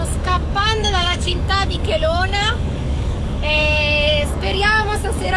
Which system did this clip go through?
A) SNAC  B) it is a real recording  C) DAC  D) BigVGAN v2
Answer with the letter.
C